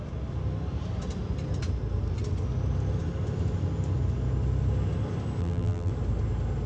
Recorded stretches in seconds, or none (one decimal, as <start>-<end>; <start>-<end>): 0.0-5.4; 5.9-6.7